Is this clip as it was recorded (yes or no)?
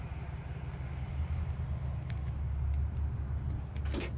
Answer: yes